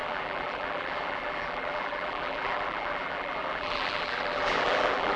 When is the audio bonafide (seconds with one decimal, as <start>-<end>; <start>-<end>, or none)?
none